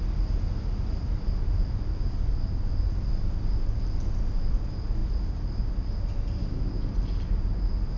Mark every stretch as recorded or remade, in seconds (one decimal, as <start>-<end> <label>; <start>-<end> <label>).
0.0-8.0 recorded